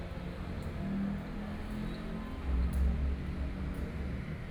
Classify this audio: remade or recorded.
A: recorded